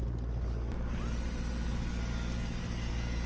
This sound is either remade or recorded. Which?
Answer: recorded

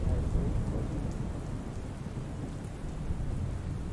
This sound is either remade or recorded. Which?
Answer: recorded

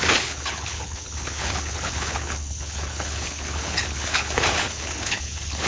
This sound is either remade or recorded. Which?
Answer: remade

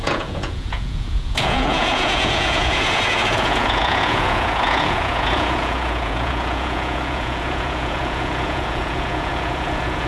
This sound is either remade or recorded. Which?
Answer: remade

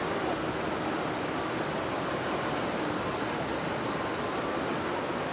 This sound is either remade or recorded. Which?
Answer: recorded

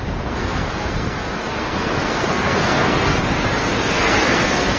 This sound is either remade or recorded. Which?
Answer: remade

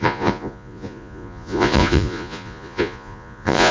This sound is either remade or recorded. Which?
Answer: remade